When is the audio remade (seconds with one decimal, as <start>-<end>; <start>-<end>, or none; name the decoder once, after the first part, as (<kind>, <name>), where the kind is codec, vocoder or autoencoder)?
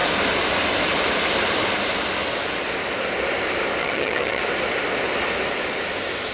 3.8-4.4 (vocoder, HiFi-GAN)